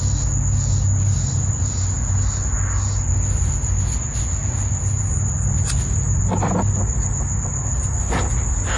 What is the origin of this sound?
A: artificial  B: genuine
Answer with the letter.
B